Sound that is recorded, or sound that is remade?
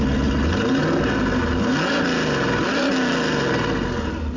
recorded